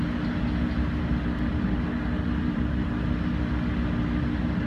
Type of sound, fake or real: real